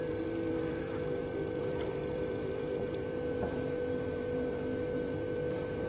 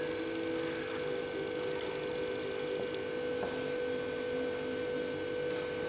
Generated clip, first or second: first